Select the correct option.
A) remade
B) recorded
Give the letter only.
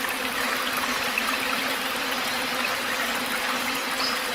B